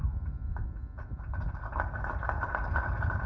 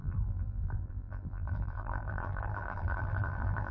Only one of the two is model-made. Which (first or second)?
second